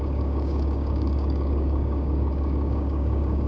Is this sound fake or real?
fake